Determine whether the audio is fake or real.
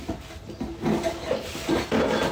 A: real